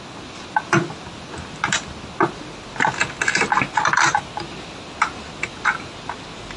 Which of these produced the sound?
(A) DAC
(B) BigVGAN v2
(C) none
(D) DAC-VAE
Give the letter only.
C